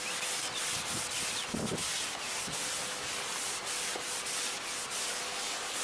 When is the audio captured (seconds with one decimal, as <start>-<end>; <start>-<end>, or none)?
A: 0.0-1.8; 5.1-5.8